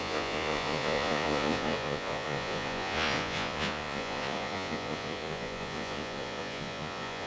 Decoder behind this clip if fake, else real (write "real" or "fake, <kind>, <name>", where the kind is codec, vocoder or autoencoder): fake, vocoder, Vocos